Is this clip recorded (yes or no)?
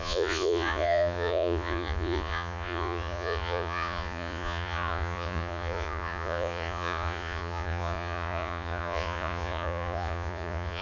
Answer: no